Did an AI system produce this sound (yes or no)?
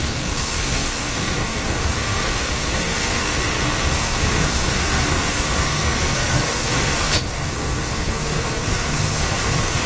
yes